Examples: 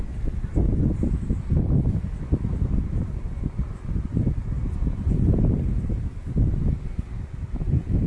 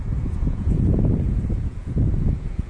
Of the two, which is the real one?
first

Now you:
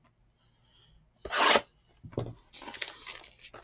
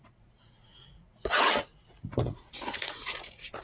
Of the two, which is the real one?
first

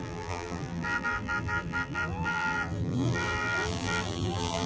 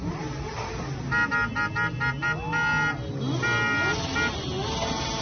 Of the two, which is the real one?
second